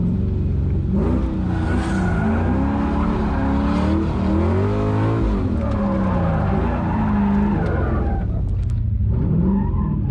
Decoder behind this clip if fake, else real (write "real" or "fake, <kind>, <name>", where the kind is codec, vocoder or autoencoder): real